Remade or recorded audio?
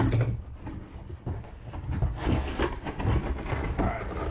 recorded